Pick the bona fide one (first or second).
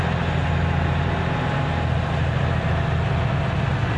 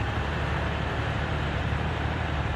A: first